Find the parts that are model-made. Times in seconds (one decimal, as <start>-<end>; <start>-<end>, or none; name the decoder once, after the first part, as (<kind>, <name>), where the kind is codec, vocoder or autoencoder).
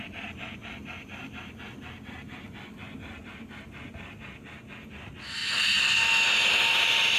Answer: 5.4-6.0 (vocoder, BigVGAN v2)